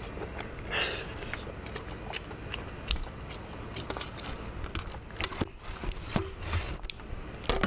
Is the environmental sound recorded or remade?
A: recorded